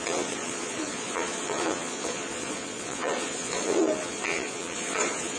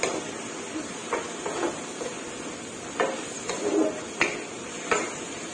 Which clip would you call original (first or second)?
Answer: second